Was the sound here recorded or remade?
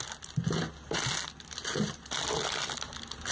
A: recorded